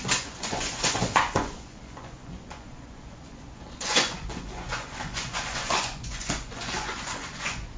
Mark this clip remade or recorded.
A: remade